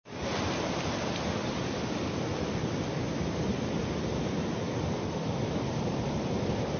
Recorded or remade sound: recorded